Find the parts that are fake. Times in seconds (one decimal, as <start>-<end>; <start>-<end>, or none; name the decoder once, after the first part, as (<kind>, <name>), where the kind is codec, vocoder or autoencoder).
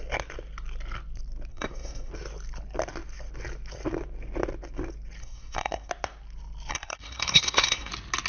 1.5-2.1 (codec, SNAC); 5.2-5.9; 6.7-7.9